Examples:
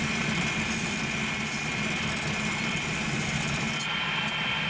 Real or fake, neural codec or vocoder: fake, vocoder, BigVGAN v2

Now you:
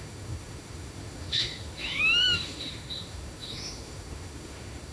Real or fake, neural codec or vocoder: fake, autoencoder, DAC-VAE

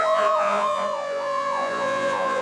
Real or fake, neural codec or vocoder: fake, vocoder, Vocos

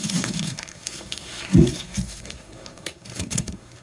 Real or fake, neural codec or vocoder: fake, codec, SNAC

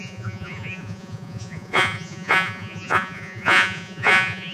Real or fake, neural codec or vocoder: fake, vocoder, Vocos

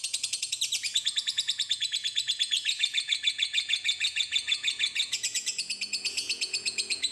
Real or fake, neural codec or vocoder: fake, vocoder, Vocos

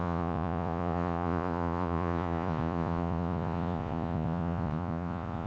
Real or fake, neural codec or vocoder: fake, vocoder, Vocos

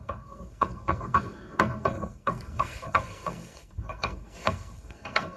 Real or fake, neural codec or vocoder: fake, codec, SNAC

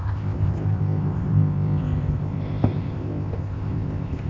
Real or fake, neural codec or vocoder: fake, codec, ZipCodec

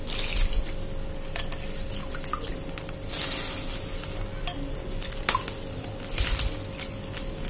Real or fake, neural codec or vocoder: real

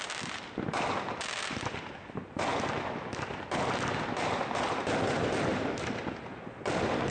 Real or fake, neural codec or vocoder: real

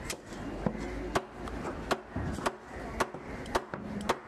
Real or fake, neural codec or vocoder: real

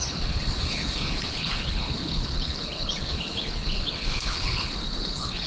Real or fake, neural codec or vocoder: fake, codec, HILCodec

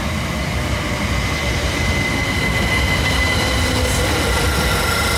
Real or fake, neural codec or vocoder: real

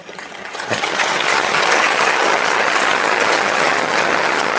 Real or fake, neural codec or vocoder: fake, vocoder, HiFi-GAN